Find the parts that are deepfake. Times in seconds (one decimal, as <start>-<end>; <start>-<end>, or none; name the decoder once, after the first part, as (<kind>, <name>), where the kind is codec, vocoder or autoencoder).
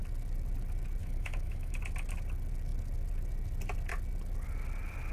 1.0-1.8 (autoencoder, DAC-VAE)